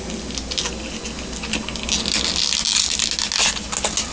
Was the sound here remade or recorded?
recorded